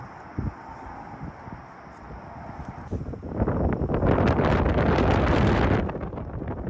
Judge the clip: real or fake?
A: real